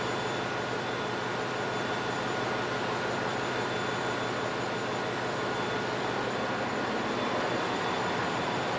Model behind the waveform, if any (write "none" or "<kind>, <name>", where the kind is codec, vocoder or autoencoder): none